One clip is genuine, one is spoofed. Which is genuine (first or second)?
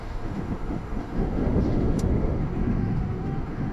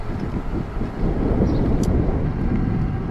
second